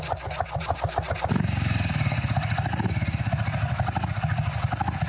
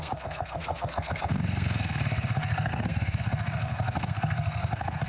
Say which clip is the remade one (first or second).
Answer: second